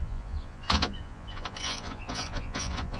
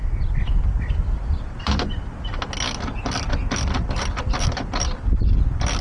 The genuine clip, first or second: second